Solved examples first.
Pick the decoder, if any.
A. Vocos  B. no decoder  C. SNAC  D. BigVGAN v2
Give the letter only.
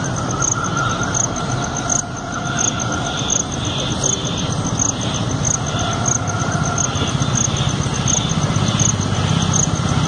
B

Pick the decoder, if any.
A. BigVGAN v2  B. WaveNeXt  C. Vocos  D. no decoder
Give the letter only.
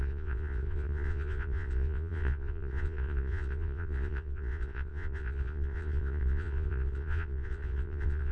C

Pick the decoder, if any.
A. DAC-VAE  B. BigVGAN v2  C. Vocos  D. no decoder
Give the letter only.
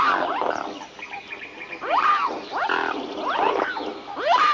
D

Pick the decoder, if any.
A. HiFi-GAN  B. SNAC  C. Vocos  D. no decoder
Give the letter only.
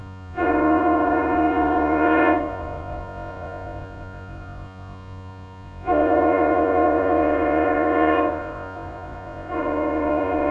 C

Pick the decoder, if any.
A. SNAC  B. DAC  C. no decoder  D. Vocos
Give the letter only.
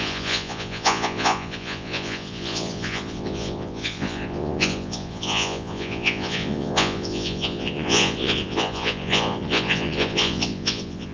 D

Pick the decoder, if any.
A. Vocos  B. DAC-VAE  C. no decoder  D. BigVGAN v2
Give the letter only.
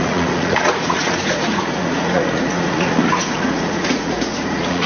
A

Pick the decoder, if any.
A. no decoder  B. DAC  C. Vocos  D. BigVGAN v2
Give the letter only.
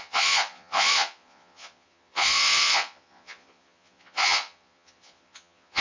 C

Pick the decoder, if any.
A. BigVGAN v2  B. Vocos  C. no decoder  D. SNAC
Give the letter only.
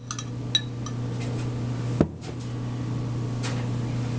C